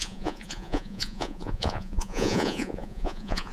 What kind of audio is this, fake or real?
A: fake